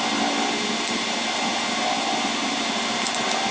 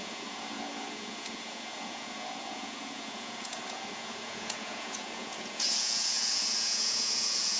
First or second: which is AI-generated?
second